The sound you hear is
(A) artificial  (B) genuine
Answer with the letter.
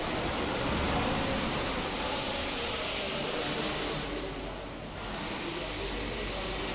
B